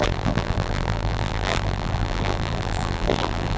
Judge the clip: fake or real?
fake